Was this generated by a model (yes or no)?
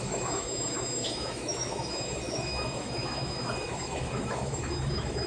yes